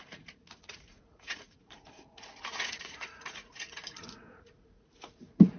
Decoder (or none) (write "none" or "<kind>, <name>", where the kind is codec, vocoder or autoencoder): vocoder, Vocos